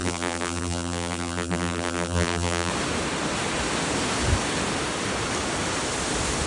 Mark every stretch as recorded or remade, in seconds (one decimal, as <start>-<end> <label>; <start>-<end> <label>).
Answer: 0.0-2.7 remade; 2.7-6.5 recorded